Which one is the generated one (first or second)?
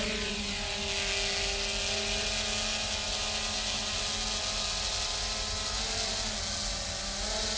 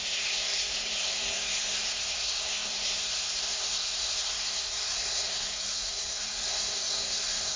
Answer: second